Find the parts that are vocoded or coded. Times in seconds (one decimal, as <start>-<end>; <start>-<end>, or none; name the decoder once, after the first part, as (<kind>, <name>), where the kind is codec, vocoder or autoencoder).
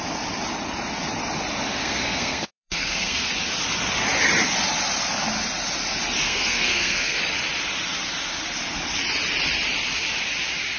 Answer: 1.8-3.3 (codec, SNAC); 6.2-7.2